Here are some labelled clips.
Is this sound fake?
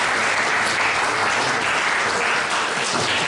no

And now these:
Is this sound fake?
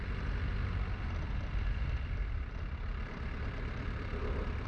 yes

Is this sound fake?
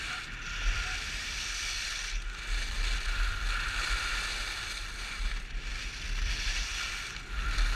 no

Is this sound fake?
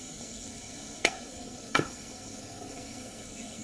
yes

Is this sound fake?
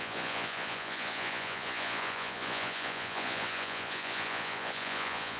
yes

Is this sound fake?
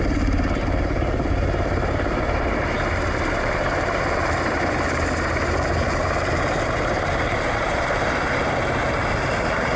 yes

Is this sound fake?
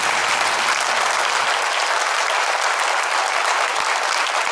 no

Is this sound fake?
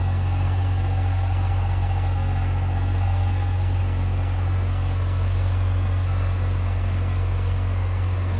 yes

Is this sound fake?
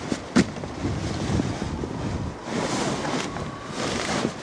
no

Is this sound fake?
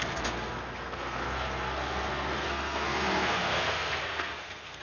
yes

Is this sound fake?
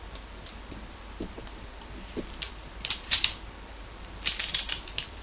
yes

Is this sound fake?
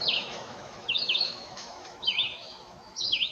yes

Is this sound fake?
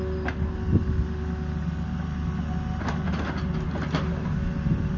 no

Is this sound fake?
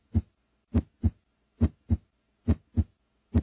no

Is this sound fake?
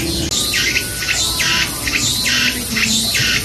no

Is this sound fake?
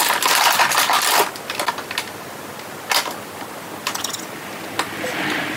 no